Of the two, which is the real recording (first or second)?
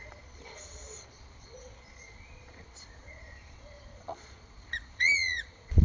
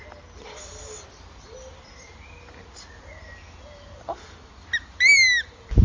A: second